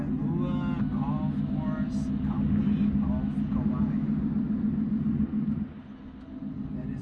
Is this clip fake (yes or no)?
no